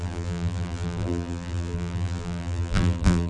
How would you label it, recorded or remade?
remade